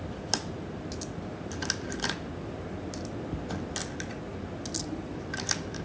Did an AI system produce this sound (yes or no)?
no